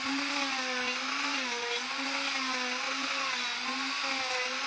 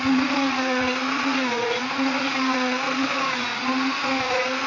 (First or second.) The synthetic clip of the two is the second